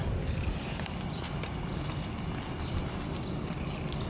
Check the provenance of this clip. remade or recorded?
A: recorded